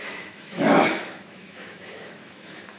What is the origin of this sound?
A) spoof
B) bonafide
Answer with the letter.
A